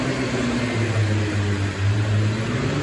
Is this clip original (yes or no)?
yes